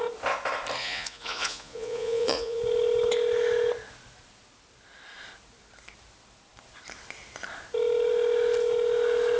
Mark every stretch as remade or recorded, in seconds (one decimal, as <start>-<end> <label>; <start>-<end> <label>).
0.0-0.8 recorded; 0.8-2.6 remade; 2.6-9.4 recorded